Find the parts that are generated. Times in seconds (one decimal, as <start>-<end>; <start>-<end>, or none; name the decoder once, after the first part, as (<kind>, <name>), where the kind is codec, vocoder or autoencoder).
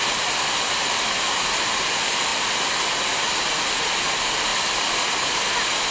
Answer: none